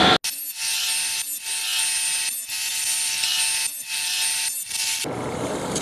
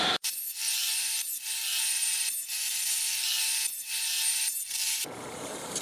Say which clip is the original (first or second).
first